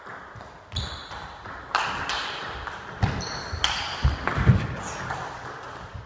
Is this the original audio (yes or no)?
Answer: yes